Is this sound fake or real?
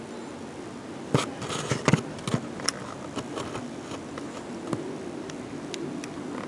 real